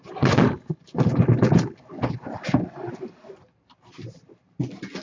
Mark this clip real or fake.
real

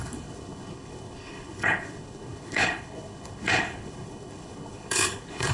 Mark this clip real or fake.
fake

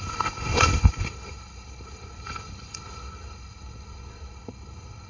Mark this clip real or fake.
fake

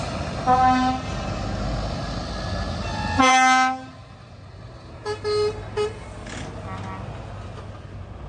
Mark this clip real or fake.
real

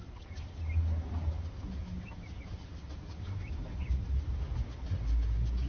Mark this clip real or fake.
real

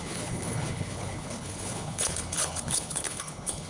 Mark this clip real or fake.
fake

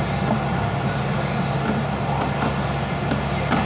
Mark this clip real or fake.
real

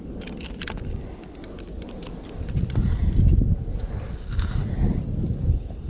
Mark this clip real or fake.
real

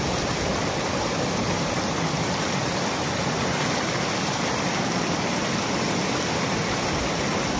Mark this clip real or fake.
real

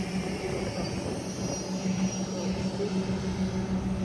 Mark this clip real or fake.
real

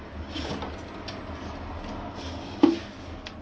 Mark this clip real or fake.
real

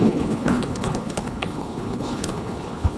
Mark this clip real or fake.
fake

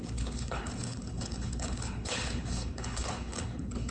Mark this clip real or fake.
fake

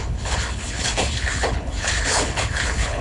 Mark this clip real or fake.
fake